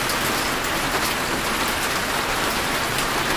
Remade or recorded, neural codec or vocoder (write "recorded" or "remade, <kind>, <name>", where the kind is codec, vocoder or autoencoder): recorded